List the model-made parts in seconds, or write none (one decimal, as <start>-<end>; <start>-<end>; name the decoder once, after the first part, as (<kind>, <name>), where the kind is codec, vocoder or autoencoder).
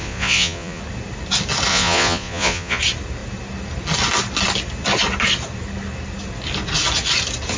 0.0-0.8 (vocoder, Vocos); 1.7-2.8